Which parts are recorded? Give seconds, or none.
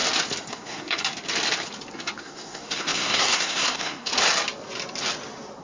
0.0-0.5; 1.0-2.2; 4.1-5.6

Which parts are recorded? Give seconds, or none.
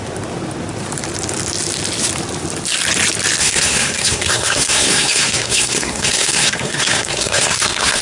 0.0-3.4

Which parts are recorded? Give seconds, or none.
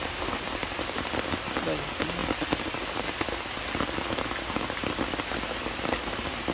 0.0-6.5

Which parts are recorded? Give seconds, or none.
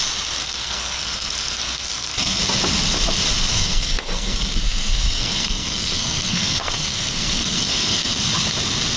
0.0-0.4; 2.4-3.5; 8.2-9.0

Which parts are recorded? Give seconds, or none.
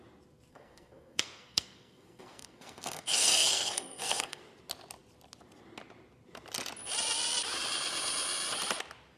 0.0-0.5; 4.4-9.2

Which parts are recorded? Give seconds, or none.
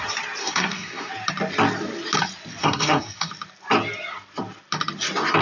0.0-0.4; 1.1-2.6; 3.3-5.4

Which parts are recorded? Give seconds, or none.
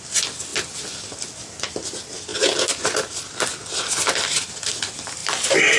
0.0-5.8